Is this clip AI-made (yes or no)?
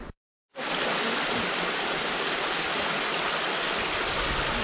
no